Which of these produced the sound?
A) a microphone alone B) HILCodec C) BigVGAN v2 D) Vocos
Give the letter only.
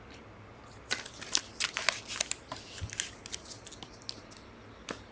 A